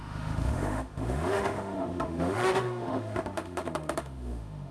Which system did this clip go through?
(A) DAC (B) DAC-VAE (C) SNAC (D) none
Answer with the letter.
B